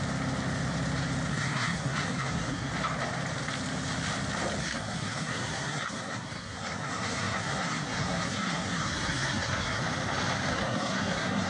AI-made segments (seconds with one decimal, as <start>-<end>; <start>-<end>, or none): 1.3-2.7; 4.6-9.8; 10.5-11.5